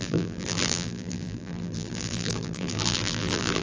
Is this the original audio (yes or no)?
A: no